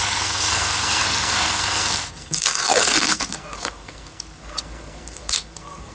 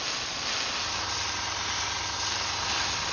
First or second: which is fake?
first